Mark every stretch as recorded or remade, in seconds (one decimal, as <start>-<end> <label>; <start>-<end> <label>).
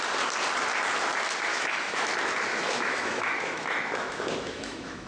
0.0-1.5 recorded; 1.5-2.1 remade; 2.1-2.5 recorded; 2.5-5.1 remade